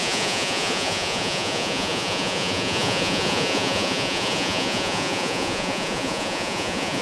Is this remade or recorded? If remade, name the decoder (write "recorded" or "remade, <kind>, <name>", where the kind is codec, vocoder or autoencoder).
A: remade, vocoder, Vocos